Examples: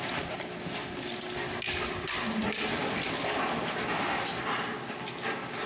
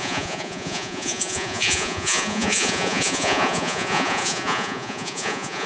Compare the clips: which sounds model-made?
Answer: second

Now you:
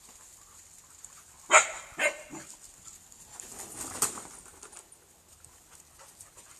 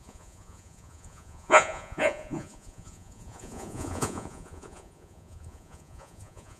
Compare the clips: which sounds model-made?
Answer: second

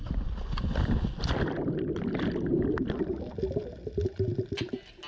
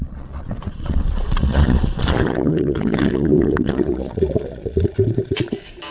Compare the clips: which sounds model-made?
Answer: second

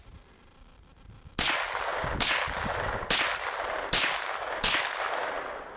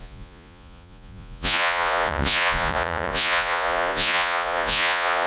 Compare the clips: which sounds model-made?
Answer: second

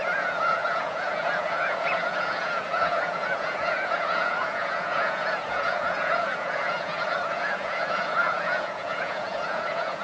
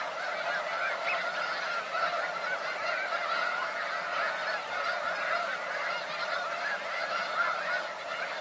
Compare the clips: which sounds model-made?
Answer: first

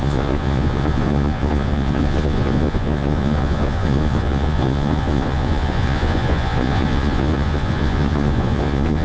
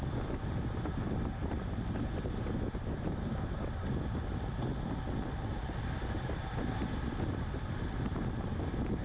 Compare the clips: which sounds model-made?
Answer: first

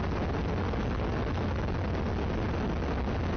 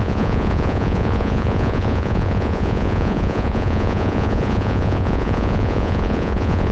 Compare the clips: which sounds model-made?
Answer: second